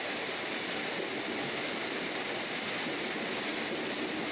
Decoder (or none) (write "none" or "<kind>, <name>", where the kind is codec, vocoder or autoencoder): none